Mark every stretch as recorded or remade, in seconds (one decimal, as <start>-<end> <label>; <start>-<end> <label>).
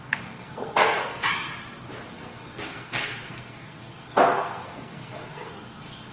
0.0-1.5 remade; 1.5-2.1 recorded; 2.1-6.1 remade